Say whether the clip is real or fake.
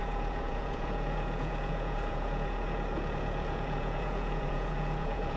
fake